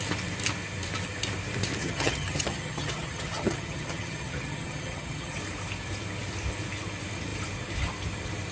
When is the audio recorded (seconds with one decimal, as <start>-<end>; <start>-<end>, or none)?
0.0-1.8; 5.4-8.5